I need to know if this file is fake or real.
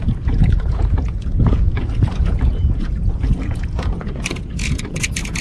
fake